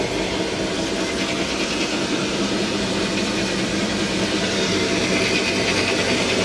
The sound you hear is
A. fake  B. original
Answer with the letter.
B